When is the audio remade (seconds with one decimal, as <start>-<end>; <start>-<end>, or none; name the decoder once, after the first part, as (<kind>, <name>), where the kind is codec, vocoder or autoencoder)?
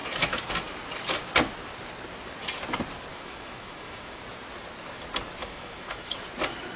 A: 3.1-4.2 (autoencoder, DAC-VAE); 5.4-6.2